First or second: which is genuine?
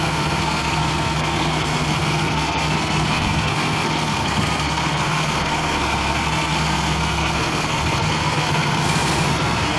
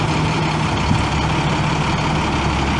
second